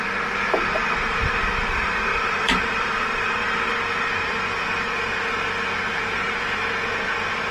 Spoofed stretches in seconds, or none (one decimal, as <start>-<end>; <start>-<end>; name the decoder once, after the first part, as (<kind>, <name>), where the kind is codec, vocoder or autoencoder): 2.1-3.7 (vocoder, BigVGAN v2); 5.9-6.7